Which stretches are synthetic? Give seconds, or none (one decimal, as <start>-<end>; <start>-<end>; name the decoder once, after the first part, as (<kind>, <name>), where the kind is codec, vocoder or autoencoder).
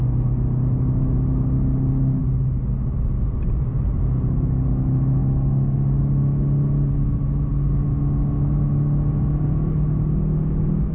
none